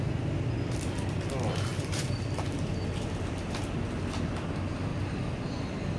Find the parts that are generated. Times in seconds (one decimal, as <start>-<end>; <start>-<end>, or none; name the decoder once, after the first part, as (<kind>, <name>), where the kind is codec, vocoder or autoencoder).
1.7-2.7 (vocoder, BigVGAN v2)

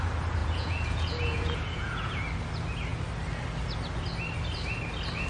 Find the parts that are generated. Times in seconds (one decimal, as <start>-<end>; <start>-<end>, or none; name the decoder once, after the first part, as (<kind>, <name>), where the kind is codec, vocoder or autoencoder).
0.4-2.2 (vocoder, Vocos)

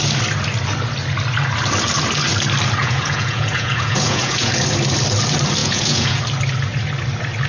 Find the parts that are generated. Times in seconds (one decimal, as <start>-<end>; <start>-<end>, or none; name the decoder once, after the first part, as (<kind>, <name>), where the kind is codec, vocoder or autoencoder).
2.8-4.5 (vocoder, Vocos); 5.6-6.2

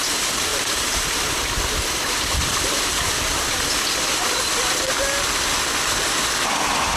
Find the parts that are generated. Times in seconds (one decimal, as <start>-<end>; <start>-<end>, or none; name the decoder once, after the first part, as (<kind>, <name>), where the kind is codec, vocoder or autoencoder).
0.5-3.5 (vocoder, BigVGAN v2)

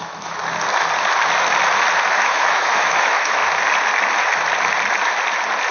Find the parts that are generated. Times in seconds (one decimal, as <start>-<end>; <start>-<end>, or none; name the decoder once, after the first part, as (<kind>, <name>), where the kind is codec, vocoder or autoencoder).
0.0-0.4 (autoencoder, DAC-VAE); 2.1-3.4